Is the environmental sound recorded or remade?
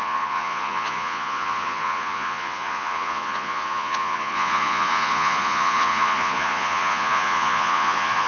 remade